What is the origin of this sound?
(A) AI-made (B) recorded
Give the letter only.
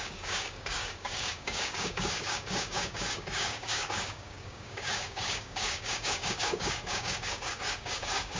A